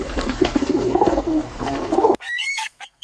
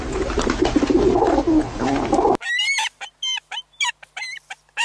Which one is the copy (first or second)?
first